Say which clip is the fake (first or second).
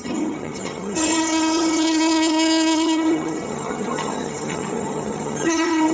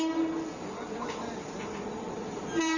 first